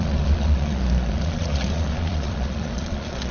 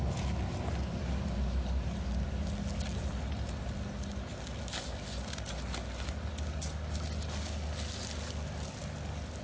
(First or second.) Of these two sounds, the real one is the second